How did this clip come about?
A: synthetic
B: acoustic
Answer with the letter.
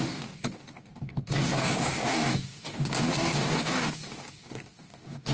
A